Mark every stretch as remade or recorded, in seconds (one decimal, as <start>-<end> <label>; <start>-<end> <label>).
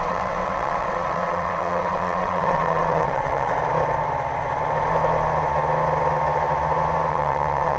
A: 0.0-3.5 remade; 3.5-7.1 recorded; 7.1-7.8 remade